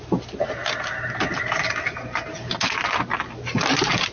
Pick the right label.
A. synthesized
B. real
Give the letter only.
B